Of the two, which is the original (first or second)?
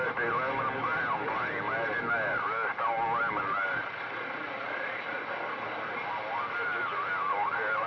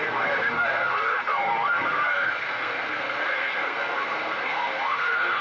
first